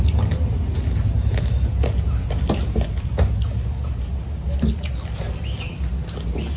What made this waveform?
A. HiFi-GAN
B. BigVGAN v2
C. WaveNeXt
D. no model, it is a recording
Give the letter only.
D